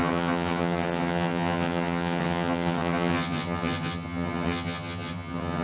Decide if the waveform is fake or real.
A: fake